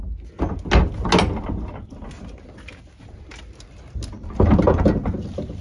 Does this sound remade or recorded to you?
recorded